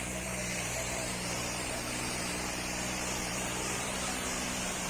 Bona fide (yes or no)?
no